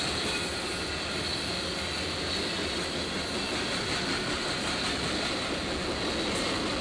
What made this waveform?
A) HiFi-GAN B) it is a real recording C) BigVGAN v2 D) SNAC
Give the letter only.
B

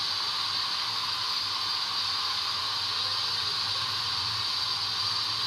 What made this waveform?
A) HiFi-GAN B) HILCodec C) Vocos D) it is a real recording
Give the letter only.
D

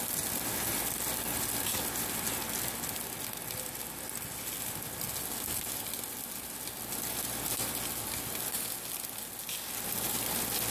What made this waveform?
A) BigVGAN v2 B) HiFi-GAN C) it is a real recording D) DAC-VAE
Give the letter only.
C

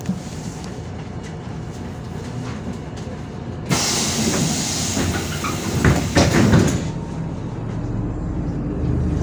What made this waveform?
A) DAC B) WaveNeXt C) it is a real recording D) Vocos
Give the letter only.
C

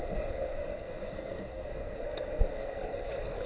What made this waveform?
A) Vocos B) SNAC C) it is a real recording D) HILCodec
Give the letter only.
B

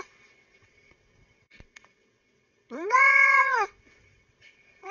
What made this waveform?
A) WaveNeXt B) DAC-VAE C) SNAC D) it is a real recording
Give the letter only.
A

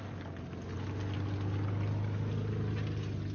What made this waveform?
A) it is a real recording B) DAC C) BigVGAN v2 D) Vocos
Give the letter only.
A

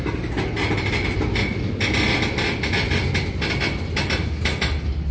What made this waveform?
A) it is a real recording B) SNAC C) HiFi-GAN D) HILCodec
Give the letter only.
A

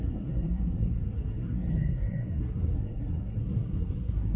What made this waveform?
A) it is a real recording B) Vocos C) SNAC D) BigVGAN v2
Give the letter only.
C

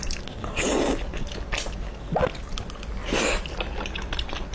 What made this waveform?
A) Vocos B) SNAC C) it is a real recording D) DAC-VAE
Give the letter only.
C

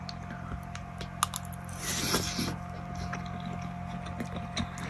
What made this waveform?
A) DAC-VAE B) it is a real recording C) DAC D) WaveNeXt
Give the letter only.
B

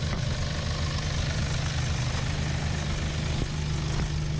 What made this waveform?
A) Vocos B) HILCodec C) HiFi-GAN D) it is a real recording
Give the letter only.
D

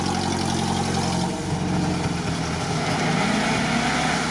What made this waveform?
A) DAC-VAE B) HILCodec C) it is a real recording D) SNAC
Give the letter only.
C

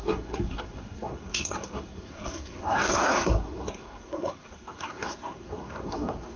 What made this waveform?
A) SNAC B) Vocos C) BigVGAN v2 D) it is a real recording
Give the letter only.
A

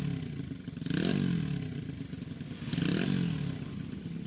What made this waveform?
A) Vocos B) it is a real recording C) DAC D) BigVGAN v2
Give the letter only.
B